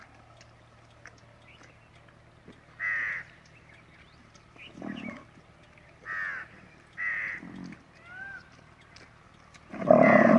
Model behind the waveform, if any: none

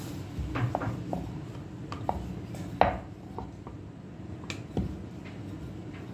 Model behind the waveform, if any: none